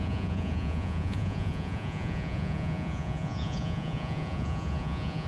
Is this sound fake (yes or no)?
yes